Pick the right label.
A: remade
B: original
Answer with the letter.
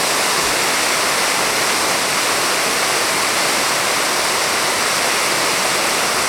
B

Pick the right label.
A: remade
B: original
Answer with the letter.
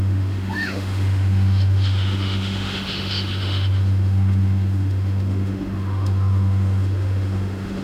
A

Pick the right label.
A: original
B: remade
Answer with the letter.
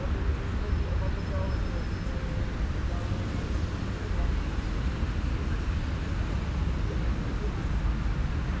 A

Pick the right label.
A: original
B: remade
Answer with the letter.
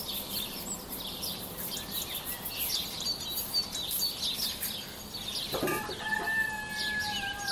A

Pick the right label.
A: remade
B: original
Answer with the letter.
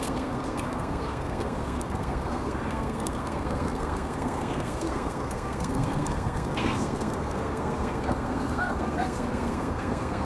A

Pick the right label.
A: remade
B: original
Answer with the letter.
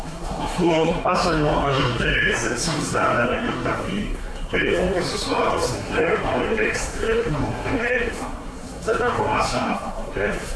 A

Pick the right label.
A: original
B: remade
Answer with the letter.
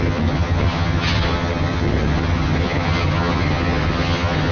B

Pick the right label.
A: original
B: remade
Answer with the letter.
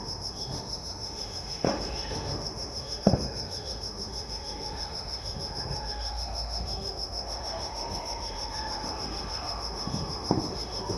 B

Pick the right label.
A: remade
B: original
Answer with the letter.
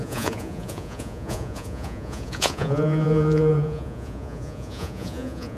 A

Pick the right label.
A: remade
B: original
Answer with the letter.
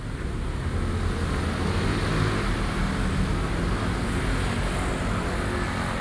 B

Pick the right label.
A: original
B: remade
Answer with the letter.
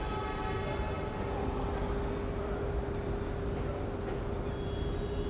A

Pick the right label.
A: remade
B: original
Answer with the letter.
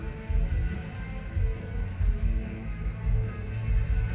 B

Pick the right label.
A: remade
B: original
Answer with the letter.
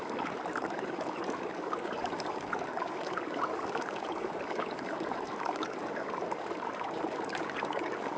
A